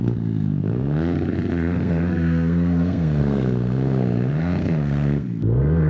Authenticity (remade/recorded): remade